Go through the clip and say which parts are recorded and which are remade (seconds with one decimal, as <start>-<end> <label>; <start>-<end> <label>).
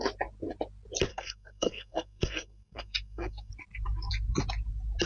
0.0-1.1 recorded; 1.1-3.5 remade; 3.5-5.1 recorded